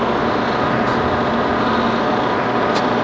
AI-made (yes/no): no